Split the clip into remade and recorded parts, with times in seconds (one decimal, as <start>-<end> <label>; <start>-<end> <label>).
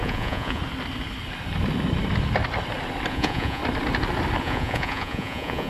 0.0-0.6 remade; 0.6-3.1 recorded; 3.1-3.6 remade; 3.6-4.4 recorded; 4.4-5.7 remade